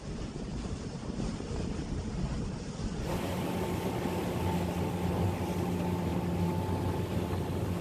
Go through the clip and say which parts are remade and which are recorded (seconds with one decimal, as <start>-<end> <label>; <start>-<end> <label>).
0.0-7.8 recorded